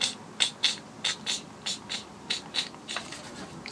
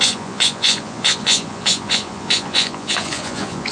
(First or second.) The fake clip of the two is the second